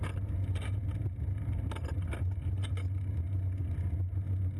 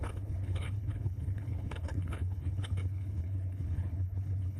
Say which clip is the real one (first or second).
first